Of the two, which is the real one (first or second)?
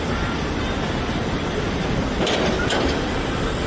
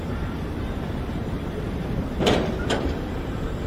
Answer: first